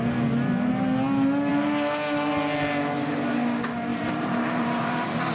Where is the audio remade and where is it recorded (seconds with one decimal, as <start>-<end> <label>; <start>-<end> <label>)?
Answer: 0.0-3.9 recorded; 3.9-5.3 remade